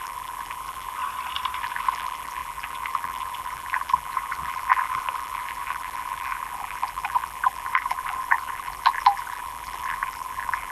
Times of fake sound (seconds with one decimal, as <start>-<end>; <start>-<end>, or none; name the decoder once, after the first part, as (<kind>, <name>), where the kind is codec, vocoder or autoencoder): 0.0-1.0 (vocoder, BigVGAN v2); 1.6-10.7